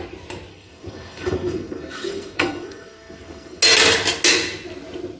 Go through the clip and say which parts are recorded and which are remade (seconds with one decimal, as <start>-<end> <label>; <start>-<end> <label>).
0.0-0.5 recorded; 0.5-3.6 remade; 3.6-5.2 recorded